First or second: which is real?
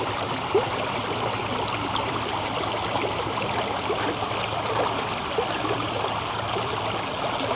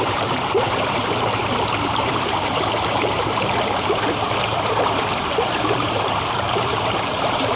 first